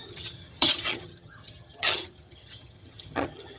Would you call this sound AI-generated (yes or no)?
yes